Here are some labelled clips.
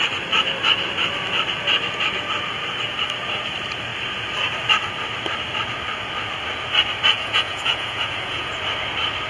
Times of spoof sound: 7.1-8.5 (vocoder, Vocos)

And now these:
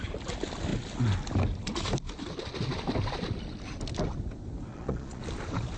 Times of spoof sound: 4.7-5.2 (vocoder, Vocos)